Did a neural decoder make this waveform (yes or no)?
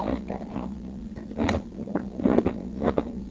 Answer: yes